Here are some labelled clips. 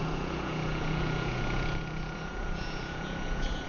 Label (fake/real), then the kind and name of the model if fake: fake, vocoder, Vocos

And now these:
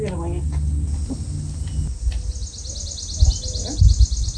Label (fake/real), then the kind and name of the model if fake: real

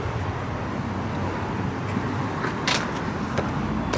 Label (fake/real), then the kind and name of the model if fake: real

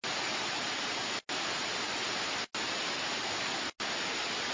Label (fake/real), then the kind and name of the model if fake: real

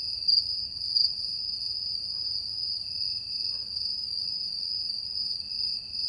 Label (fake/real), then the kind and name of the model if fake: real